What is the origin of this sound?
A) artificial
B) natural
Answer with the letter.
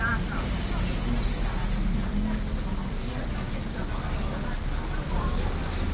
B